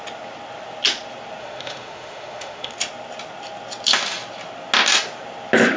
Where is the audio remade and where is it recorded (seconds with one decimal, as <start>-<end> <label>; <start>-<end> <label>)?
0.0-1.4 recorded; 1.4-2.7 remade; 2.7-5.8 recorded